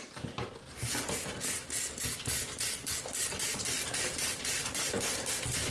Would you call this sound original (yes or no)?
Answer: yes